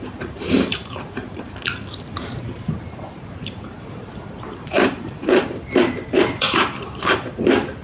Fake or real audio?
fake